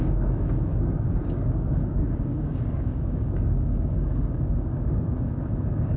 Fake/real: fake